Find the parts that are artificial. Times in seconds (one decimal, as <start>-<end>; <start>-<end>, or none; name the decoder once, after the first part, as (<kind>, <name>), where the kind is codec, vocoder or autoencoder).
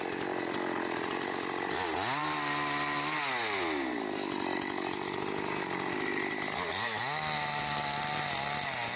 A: none